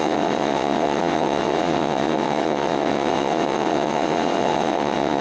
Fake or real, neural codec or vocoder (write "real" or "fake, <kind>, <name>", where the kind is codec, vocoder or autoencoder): fake, vocoder, WaveNeXt